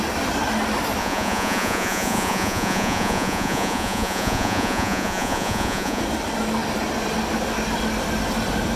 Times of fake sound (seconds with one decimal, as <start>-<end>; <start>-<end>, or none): 1.0-6.0